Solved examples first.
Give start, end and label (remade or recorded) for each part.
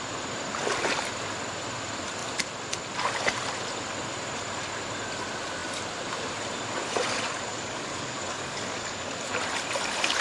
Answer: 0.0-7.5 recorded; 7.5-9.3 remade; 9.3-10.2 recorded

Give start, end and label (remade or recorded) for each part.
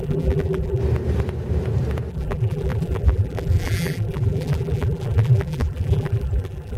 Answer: 0.0-0.8 remade; 0.8-2.1 recorded; 2.1-6.8 remade